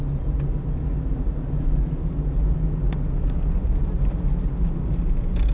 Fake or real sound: real